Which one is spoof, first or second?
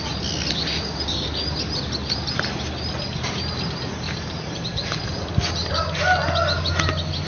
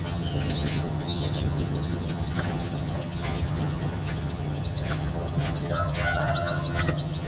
second